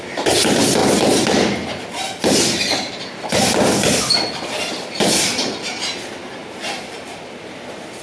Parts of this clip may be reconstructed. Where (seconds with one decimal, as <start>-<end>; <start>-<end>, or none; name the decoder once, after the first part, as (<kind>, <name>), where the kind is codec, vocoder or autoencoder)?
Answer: 6.4-7.2 (vocoder, BigVGAN v2)